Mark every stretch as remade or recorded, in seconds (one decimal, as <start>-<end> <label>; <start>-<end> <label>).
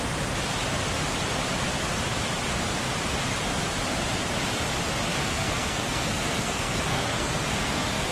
0.0-5.1 recorded; 5.1-8.1 remade